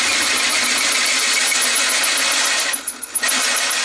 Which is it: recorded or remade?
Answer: recorded